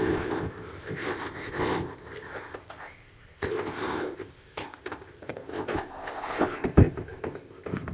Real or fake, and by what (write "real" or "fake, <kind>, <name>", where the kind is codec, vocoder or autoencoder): fake, codec, ZipCodec